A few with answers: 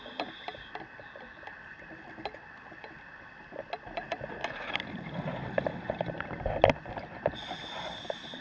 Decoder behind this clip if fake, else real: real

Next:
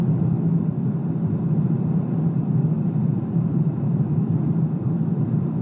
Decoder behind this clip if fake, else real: fake, vocoder, BigVGAN v2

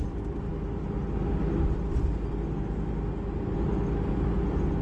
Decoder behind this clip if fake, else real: real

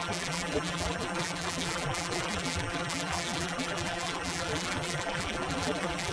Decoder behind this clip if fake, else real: fake, vocoder, BigVGAN v2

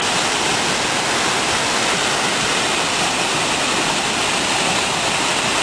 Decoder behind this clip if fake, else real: real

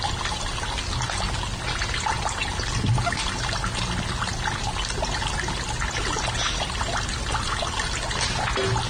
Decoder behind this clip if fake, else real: real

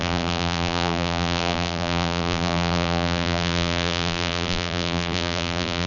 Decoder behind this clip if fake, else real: fake, vocoder, BigVGAN v2